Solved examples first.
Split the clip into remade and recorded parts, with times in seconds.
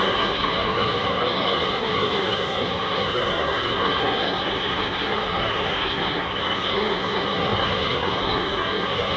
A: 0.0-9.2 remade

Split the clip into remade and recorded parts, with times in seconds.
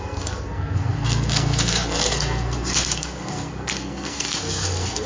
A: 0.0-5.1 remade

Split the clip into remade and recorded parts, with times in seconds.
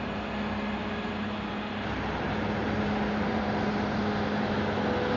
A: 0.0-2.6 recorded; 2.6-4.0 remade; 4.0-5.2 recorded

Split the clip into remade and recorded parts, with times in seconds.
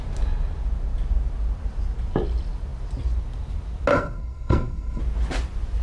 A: 0.0-3.9 recorded; 3.9-5.0 remade; 5.0-5.8 recorded